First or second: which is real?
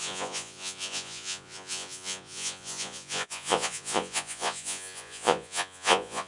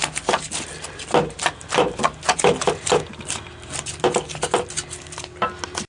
second